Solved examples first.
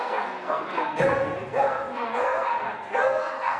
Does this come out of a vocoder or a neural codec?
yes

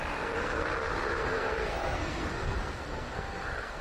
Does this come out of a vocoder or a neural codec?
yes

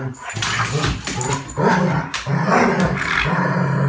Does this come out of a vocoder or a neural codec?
no